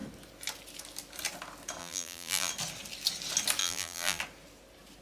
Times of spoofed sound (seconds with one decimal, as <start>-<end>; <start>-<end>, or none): 1.8-2.5; 3.6-4.2